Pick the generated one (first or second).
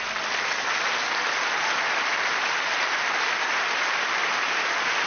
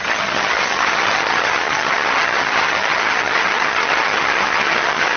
second